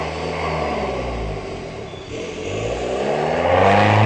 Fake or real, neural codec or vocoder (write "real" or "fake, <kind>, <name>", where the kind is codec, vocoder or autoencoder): real